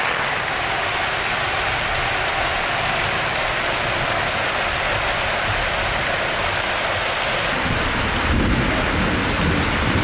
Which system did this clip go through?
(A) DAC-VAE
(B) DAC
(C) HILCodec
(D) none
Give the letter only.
D